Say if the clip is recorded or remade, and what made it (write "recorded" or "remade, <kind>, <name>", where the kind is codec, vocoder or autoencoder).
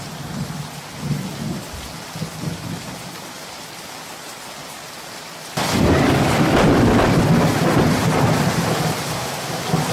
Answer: recorded